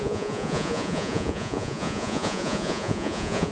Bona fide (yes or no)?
no